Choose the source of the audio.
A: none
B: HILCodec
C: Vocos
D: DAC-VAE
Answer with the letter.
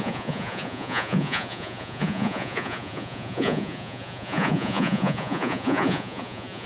C